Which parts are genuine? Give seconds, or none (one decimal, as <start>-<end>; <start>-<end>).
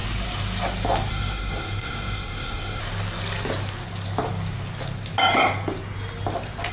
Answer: 0.0-1.1; 2.8-6.7